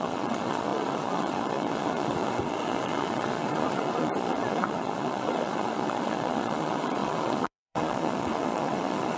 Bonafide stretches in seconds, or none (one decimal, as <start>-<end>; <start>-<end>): none